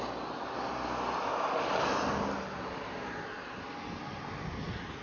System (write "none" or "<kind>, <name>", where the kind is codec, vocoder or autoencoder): none